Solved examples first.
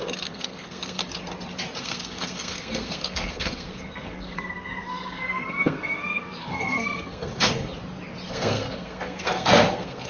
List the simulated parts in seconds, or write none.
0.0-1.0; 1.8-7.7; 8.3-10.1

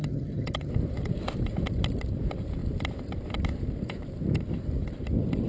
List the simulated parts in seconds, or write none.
0.0-0.7

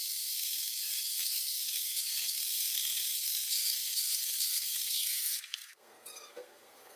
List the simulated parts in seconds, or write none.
0.0-7.0